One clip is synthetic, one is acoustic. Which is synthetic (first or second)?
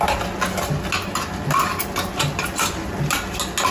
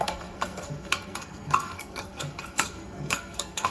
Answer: second